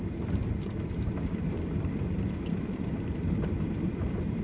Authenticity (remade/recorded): remade